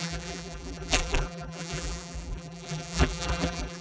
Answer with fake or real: fake